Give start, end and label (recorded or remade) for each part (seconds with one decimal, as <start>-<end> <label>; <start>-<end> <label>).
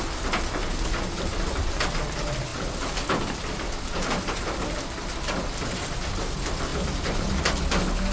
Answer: 0.0-2.5 recorded; 2.5-3.8 remade; 3.8-6.7 recorded; 6.7-7.4 remade; 7.4-8.1 recorded